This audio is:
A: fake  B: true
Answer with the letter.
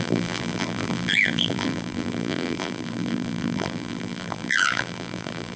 A